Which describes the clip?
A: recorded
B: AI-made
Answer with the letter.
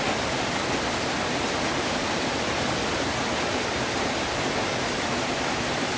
B